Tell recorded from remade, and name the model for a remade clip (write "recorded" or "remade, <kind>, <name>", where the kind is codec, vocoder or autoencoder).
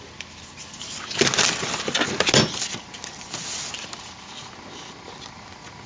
recorded